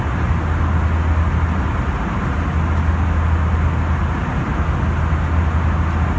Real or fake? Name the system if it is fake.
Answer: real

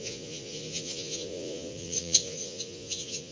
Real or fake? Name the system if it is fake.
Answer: fake, vocoder, Vocos